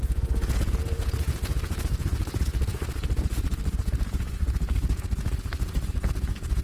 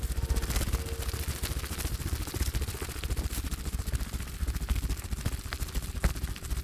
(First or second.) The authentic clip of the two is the second